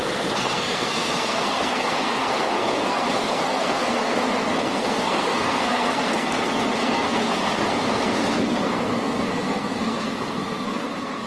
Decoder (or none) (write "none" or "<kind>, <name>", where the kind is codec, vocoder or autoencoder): codec, SNAC